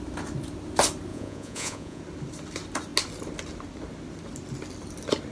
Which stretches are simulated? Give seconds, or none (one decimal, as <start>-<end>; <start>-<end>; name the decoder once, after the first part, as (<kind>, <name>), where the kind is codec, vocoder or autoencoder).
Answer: 1.1-2.0 (vocoder, Vocos)